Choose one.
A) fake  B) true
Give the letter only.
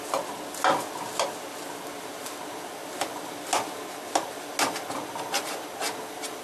B